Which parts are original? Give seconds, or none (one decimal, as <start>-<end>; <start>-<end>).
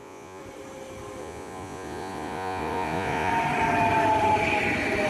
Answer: 0.4-1.2; 3.3-5.1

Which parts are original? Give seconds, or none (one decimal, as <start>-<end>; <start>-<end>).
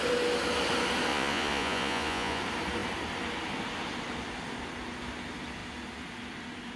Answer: 0.0-1.1; 2.4-6.8